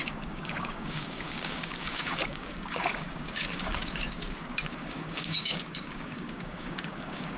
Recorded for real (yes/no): no